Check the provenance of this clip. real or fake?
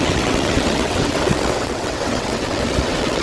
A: fake